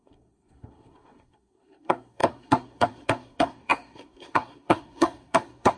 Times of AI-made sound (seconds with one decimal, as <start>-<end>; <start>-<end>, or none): 0.0-5.8